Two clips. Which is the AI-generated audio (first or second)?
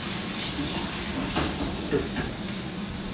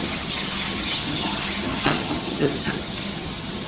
second